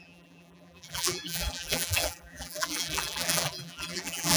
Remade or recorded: remade